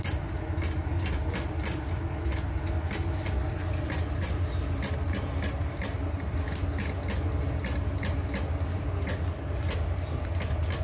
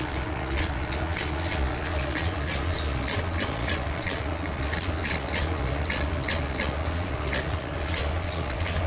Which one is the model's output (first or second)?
second